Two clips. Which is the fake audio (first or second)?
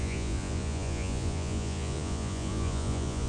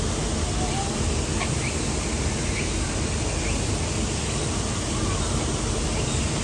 first